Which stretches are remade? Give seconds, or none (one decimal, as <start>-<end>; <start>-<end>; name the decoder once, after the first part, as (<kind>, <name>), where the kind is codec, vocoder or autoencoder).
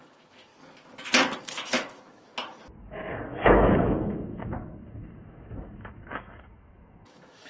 0.0-0.5 (autoencoder, DAC-VAE); 1.4-2.3; 2.8-7.5